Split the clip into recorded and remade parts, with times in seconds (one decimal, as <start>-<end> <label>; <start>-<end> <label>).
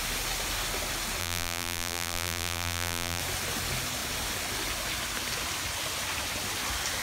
0.0-1.2 recorded; 1.2-3.2 remade; 3.2-7.0 recorded